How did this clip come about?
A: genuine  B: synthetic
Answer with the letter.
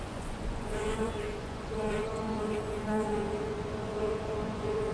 B